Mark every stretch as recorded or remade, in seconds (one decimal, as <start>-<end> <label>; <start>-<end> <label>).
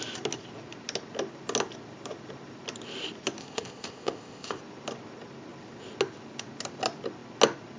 0.0-3.4 recorded; 3.4-4.6 remade; 4.6-7.8 recorded